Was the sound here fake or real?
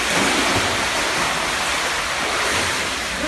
real